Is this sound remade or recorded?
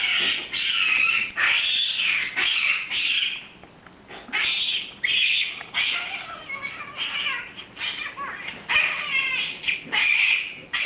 recorded